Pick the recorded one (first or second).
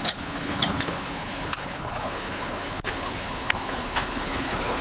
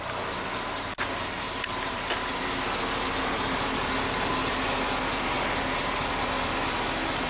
second